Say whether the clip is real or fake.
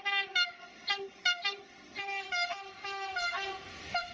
real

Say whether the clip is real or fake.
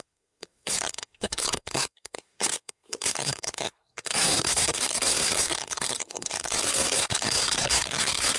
fake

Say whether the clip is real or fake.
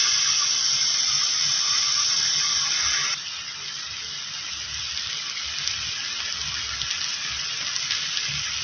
real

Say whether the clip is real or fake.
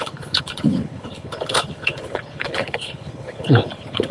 fake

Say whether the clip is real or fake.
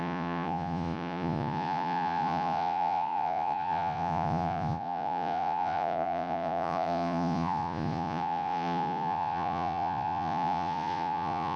fake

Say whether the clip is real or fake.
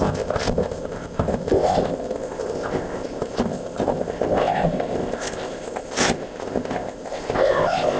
fake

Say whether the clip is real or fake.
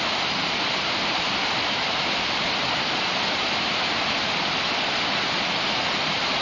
real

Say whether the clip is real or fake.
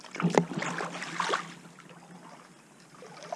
real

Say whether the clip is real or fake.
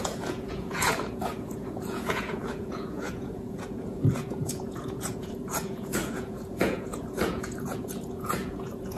fake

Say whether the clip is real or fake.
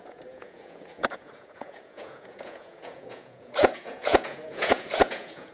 fake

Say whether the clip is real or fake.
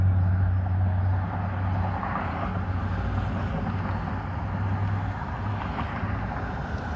real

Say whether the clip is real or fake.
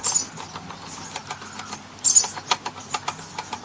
real